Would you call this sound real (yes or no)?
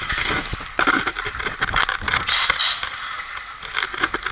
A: yes